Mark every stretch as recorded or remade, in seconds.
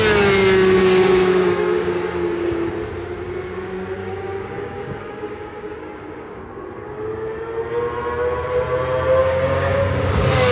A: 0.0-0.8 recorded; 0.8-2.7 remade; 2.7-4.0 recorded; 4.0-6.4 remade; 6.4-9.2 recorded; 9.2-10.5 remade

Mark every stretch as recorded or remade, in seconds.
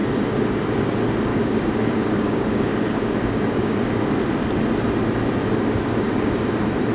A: 0.0-1.3 recorded; 1.3-4.0 remade; 4.0-5.9 recorded; 5.9-6.5 remade; 6.5-6.9 recorded